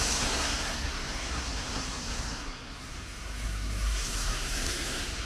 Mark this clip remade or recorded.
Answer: remade